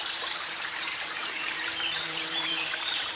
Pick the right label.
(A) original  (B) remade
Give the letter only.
B